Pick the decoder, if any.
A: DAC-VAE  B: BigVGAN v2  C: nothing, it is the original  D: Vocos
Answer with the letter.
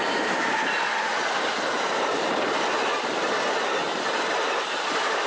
C